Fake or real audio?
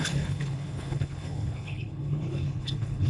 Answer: fake